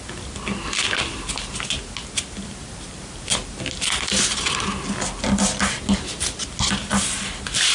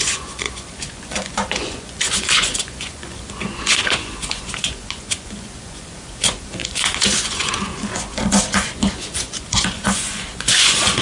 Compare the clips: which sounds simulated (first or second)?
second